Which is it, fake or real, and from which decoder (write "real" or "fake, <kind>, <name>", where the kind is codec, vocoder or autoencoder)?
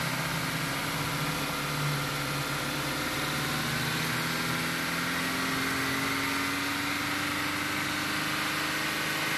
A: real